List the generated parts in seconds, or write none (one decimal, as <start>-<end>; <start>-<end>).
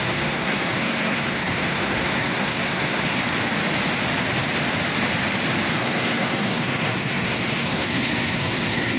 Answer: 0.0-3.2; 5.7-9.0